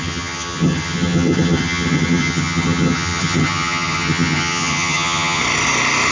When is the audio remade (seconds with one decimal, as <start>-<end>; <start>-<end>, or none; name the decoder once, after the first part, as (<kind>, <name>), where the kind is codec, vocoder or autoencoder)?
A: 0.0-5.4 (vocoder, HiFi-GAN)